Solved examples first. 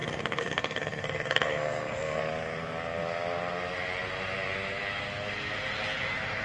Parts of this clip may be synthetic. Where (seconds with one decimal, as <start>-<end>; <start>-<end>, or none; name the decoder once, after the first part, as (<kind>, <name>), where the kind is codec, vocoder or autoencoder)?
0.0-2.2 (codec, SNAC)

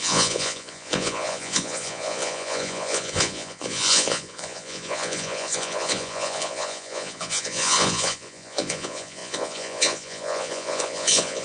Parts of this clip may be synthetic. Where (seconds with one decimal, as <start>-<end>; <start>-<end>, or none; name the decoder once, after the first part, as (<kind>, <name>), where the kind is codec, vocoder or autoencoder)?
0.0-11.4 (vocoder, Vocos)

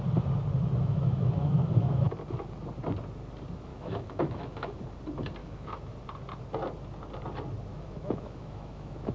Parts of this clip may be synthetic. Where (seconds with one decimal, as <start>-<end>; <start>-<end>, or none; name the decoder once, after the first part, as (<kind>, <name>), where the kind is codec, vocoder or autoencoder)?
0.8-2.1 (autoencoder, DAC-VAE); 3.7-4.8; 5.4-5.9; 7.7-9.1

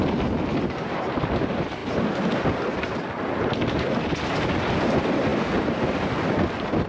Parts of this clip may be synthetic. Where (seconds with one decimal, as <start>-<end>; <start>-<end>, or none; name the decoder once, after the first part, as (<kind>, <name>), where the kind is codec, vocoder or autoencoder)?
none

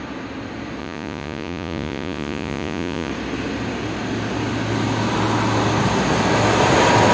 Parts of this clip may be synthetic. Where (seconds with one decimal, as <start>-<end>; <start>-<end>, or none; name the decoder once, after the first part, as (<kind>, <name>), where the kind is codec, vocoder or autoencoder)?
0.8-3.1 (vocoder, Vocos)

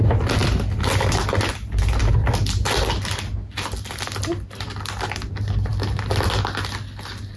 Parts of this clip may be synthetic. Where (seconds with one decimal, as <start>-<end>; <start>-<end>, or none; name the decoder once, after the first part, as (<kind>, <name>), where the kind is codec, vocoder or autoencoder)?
none